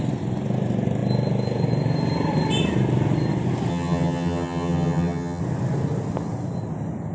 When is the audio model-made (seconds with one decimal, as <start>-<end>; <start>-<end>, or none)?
3.7-5.4